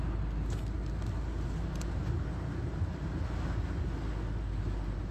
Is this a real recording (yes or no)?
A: yes